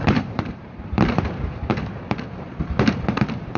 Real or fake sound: fake